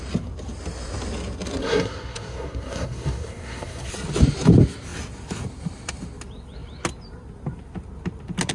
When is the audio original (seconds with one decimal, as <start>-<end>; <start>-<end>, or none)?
0.0-1.6; 3.9-8.5